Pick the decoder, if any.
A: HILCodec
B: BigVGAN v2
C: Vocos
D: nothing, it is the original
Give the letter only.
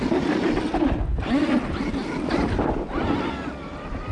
D